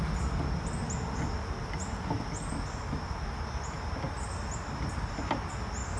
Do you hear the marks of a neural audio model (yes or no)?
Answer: no